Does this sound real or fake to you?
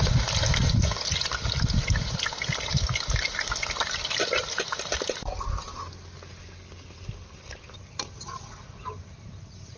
real